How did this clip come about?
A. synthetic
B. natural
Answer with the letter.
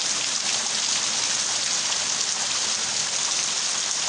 B